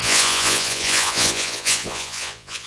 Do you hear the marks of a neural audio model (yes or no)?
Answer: yes